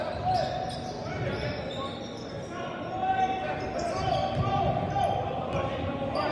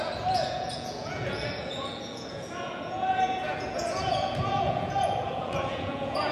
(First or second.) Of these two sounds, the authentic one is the first